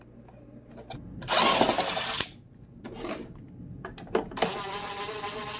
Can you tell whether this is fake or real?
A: real